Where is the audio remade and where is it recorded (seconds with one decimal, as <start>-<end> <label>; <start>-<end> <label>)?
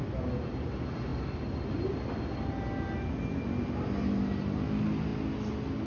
0.0-5.9 recorded